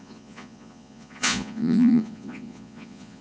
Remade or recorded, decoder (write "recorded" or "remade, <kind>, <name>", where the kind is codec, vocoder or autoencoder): remade, vocoder, Vocos